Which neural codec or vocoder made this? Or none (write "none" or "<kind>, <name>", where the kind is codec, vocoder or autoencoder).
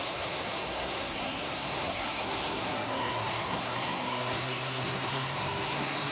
codec, SNAC